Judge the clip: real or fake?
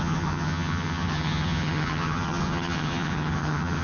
fake